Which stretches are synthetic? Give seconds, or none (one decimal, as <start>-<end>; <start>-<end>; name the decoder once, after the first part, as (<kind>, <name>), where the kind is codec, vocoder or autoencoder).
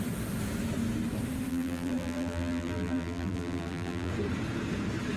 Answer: 1.5-4.1 (vocoder, BigVGAN v2)